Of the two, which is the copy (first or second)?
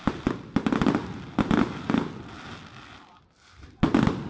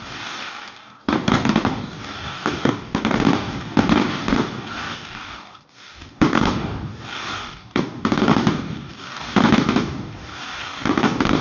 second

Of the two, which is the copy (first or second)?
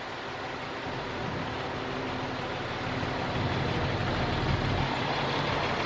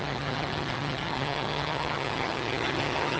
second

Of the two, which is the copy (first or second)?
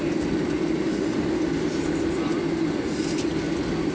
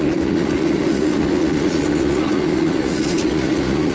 second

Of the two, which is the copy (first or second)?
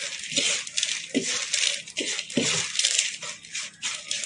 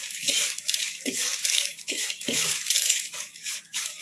second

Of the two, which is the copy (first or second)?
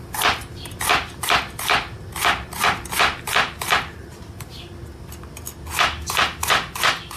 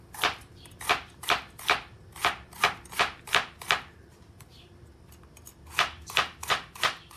second